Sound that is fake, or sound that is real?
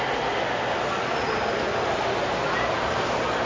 real